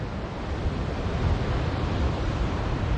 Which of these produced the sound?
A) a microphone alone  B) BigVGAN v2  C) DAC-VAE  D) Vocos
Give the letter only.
B